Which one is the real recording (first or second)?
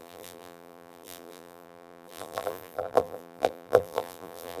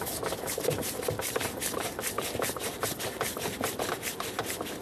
second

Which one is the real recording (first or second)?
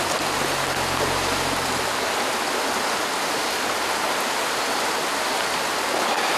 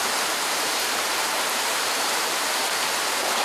first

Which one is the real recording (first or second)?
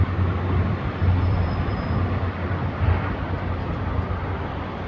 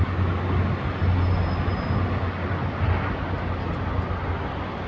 second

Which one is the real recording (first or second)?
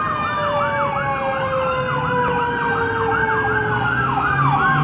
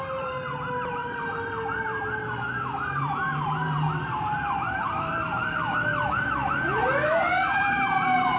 first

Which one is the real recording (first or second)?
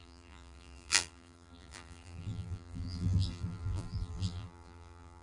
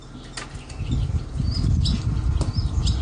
second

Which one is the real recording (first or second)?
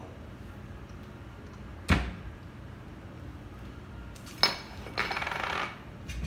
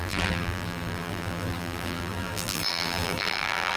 first